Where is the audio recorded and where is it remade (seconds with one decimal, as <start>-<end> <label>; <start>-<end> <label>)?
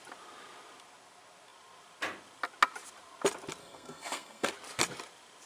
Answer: 0.0-3.6 recorded; 3.6-4.5 remade; 4.5-5.5 recorded